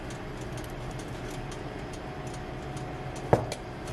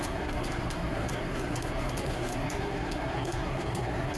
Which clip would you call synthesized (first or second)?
second